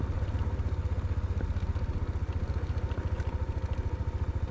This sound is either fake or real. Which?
real